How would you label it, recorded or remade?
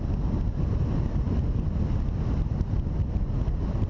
recorded